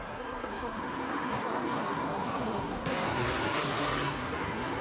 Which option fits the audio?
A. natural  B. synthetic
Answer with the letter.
B